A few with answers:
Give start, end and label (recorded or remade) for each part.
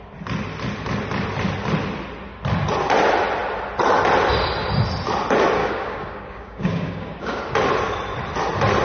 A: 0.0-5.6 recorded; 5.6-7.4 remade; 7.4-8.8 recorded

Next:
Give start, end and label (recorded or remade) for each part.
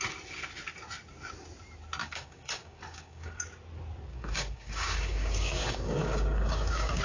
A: 0.0-2.0 recorded; 2.0-3.4 remade; 3.4-4.1 recorded; 4.1-7.0 remade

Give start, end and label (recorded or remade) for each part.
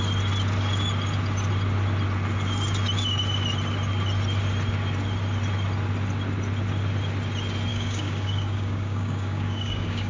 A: 0.0-7.7 recorded; 7.7-10.1 remade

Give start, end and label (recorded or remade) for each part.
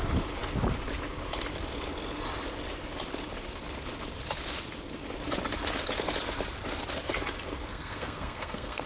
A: 0.0-7.7 recorded; 7.7-8.9 remade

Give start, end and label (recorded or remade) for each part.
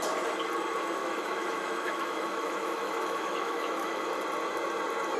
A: 0.0-1.0 recorded; 1.0-4.1 remade; 4.1-5.2 recorded